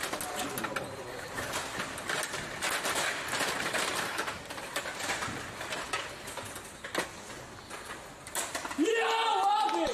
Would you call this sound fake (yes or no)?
no